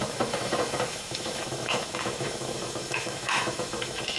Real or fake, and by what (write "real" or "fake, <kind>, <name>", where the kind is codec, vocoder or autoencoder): fake, autoencoder, DAC-VAE